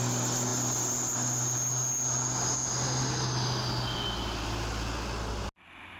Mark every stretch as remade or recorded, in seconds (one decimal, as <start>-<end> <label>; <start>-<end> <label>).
0.0-6.0 recorded